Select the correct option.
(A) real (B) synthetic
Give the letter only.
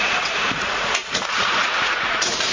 B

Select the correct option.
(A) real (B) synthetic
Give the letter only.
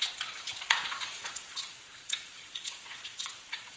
B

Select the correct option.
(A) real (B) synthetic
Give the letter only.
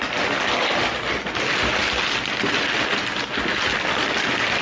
A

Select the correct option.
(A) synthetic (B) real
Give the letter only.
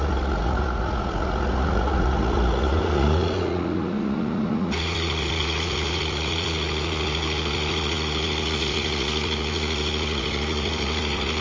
A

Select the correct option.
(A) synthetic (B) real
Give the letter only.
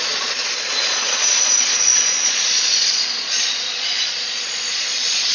A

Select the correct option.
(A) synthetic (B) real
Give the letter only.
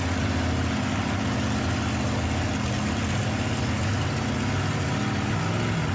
B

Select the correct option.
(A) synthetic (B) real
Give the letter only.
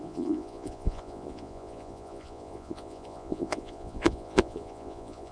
A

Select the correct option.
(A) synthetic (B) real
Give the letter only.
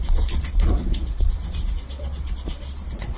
A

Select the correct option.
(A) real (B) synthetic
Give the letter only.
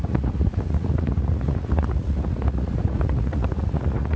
B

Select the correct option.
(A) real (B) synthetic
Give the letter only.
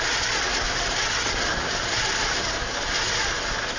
A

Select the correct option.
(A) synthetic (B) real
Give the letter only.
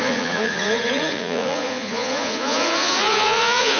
A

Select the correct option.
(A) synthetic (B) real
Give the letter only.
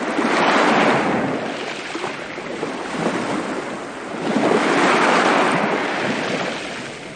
B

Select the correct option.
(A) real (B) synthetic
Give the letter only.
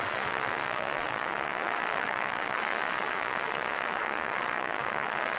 B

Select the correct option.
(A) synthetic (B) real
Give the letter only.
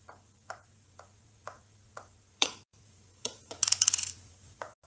A